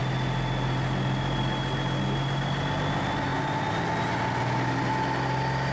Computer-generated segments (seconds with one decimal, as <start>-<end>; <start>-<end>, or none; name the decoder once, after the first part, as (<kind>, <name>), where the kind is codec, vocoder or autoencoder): none